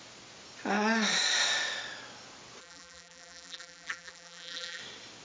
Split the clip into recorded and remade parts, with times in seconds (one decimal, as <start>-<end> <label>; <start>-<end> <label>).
0.0-2.6 recorded; 2.6-4.8 remade; 4.8-5.2 recorded